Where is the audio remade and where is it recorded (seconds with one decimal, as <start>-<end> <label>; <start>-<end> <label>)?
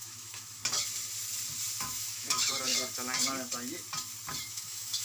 0.0-0.6 remade; 0.6-1.8 recorded; 1.8-2.7 remade; 2.7-4.4 recorded; 4.4-5.0 remade